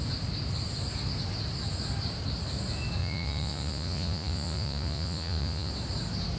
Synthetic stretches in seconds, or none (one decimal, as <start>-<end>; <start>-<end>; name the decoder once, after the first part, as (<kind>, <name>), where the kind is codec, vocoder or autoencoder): 3.0-5.7 (vocoder, Vocos)